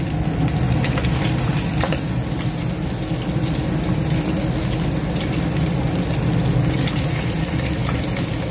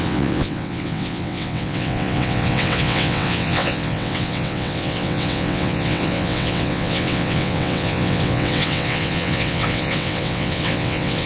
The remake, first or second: second